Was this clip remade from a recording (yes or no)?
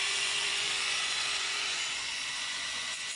yes